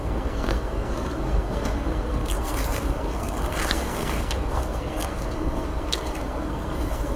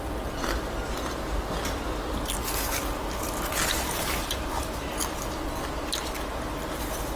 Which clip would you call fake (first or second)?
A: first